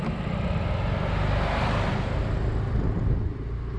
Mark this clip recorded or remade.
recorded